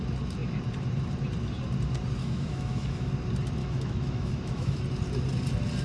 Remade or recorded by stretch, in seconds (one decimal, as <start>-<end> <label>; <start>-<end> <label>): 0.0-2.2 recorded; 2.2-3.1 remade; 3.1-3.6 recorded; 3.6-4.8 remade; 4.8-5.8 recorded